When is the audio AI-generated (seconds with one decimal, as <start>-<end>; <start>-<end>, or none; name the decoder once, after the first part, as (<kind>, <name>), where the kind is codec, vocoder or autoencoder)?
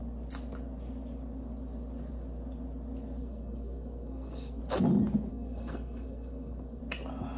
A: 3.2-4.6 (codec, SNAC); 5.3-6.8